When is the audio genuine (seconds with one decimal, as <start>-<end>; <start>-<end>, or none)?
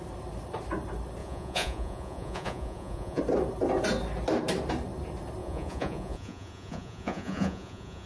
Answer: 0.0-1.2; 3.2-5.4